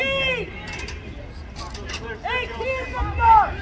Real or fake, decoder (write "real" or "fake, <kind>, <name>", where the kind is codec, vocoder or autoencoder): real